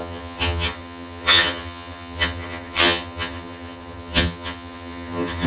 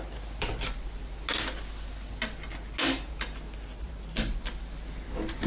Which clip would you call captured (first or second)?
second